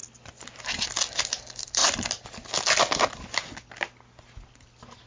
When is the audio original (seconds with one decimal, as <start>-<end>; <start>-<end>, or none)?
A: 0.0-5.1

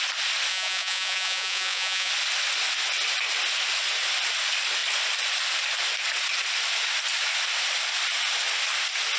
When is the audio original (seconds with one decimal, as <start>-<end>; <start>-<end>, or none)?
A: 0.0-0.5; 2.1-9.2

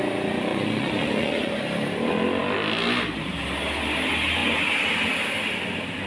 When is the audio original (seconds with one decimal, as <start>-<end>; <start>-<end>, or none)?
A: 0.0-0.5; 1.5-6.1

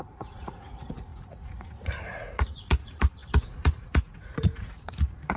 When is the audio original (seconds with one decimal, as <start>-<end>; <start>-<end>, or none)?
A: none